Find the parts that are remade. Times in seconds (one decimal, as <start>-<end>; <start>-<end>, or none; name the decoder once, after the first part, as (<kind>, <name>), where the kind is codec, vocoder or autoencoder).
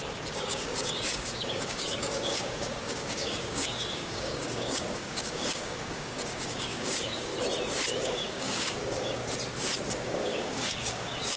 0.0-7.3 (codec, DAC); 7.9-9.2; 9.9-11.4